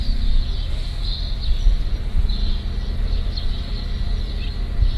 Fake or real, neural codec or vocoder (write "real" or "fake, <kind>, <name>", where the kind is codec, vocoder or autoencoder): real